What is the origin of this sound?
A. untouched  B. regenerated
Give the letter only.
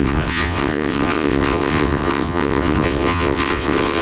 B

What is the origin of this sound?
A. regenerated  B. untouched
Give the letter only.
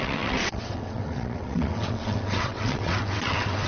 A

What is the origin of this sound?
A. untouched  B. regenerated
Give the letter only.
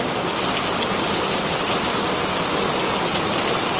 A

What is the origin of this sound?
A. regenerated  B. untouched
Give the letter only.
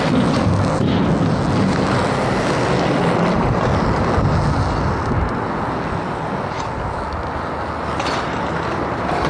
B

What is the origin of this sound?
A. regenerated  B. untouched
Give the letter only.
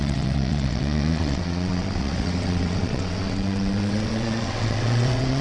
A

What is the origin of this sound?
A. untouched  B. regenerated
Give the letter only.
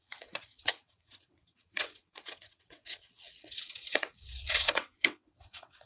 B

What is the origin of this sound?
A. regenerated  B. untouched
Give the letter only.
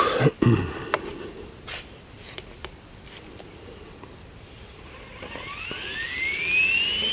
B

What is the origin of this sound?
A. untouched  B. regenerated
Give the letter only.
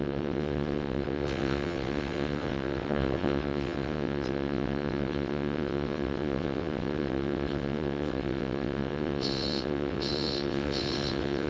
B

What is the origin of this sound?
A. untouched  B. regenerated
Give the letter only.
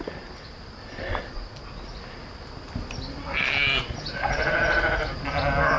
A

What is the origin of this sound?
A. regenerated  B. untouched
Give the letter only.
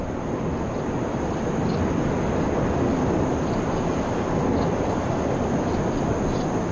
B